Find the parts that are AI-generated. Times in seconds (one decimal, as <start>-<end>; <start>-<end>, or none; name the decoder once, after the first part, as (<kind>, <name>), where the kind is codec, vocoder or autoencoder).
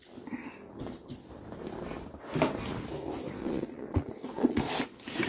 3.4-4.6 (vocoder, Vocos)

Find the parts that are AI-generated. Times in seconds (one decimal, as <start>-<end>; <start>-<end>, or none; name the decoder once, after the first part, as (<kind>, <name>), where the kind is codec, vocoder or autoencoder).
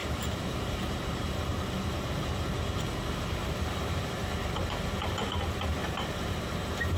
0.0-2.2 (vocoder, BigVGAN v2); 5.8-6.6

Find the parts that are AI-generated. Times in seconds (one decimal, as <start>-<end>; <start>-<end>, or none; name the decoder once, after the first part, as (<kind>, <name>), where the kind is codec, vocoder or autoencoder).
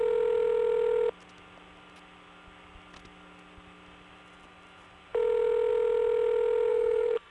6.7-7.3 (codec, SNAC)